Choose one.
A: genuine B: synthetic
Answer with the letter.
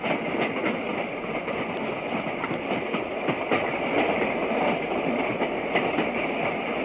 A